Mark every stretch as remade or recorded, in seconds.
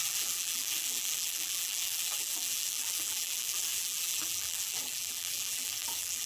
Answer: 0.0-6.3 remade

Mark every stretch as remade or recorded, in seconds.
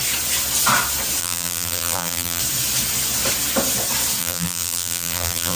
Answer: 0.0-1.2 recorded; 1.2-2.4 remade; 2.4-4.2 recorded; 4.2-5.6 remade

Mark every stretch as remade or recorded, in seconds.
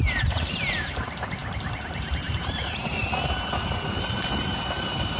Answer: 0.0-3.0 remade; 3.0-4.8 recorded; 4.8-5.2 remade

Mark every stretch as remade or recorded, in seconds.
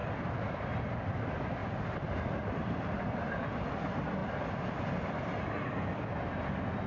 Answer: 0.0-0.8 remade; 0.8-1.6 recorded; 1.6-3.7 remade; 3.7-4.2 recorded; 4.2-5.4 remade; 5.4-6.9 recorded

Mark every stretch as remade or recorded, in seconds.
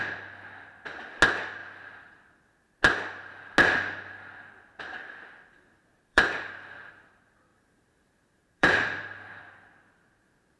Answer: 0.0-6.1 recorded; 6.1-6.9 remade; 6.9-7.5 recorded; 7.5-9.4 remade; 9.4-10.6 recorded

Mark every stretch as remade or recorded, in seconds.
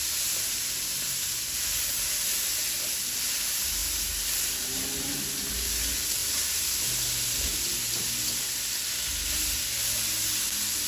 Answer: 0.0-10.9 recorded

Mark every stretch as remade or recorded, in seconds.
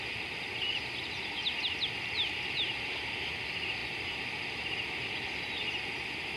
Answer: 0.0-6.4 recorded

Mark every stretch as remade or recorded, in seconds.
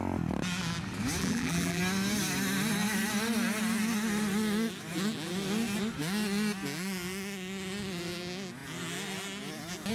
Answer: 0.0-1.2 recorded; 1.2-1.8 remade; 1.8-9.9 recorded